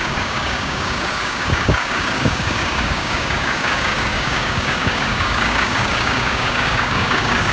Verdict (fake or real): fake